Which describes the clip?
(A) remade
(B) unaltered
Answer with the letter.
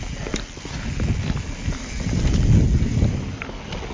B